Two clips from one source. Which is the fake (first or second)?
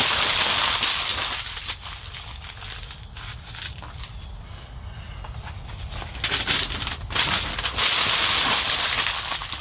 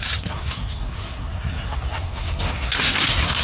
second